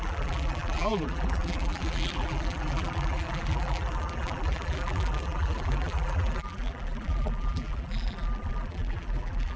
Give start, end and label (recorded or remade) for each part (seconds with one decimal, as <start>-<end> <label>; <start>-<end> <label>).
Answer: 0.0-9.6 remade